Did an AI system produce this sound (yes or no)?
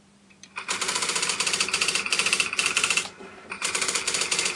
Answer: yes